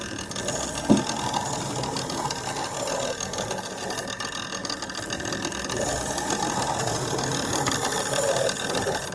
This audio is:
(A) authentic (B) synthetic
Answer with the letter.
A